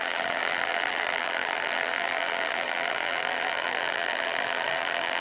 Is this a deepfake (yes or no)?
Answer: yes